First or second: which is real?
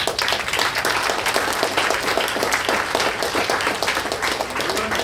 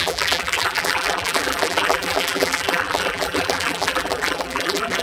first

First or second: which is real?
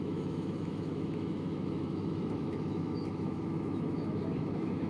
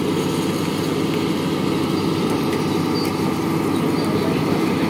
second